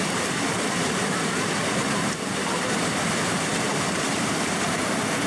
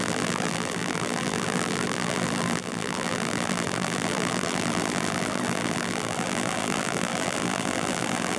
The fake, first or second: second